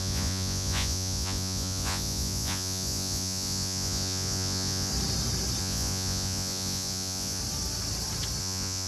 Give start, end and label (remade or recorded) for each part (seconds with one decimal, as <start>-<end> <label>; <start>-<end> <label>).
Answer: 0.0-4.9 remade; 4.9-5.6 recorded; 5.6-7.4 remade; 7.4-8.4 recorded; 8.4-8.9 remade